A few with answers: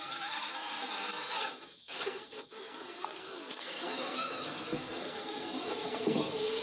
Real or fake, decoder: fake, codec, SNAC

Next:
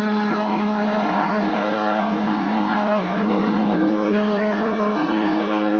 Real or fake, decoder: fake, codec, SNAC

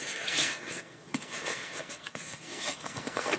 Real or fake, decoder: fake, codec, SNAC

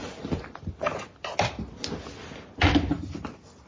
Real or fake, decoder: real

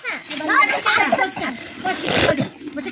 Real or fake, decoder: real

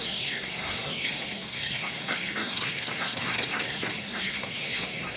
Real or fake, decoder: fake, codec, SNAC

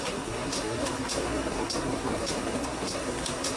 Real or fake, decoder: fake, codec, SNAC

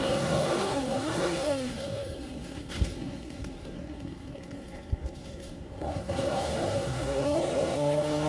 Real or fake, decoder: fake, codec, SNAC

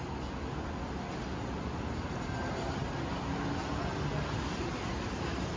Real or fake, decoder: real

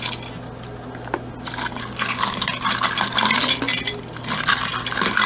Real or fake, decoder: real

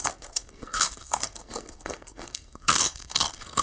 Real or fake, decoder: fake, codec, SNAC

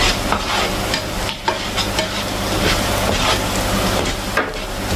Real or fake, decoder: real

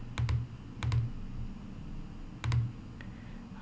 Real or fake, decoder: real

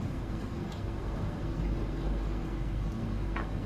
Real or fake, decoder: fake, codec, SNAC